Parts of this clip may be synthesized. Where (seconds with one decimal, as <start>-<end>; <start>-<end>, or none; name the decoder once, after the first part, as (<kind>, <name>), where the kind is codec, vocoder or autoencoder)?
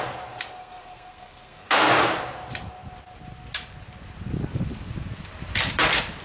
0.6-1.9 (codec, SNAC)